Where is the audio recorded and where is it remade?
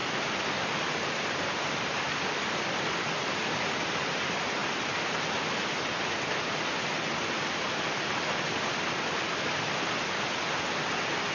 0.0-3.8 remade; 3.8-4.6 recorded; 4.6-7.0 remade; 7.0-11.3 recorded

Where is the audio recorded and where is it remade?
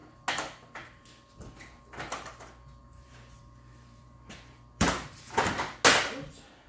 0.0-2.8 recorded; 2.8-5.5 remade; 5.5-6.7 recorded